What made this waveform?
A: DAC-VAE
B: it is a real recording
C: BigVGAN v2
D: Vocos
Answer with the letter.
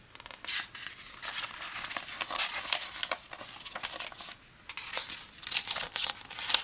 B